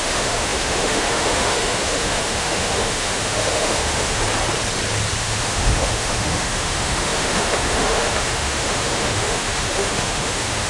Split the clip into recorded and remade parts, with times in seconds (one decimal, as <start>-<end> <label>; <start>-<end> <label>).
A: 0.0-4.2 remade; 4.2-5.2 recorded; 5.2-10.7 remade